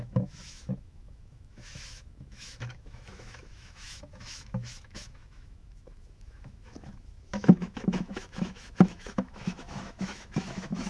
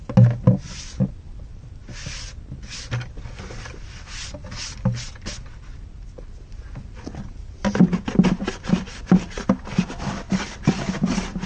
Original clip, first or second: second